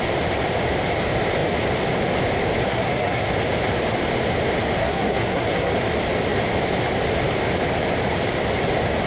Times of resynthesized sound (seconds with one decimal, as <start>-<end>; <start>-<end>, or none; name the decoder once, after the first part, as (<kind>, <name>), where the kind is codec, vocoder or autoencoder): 2.7-3.3 (codec, SNAC); 4.8-5.7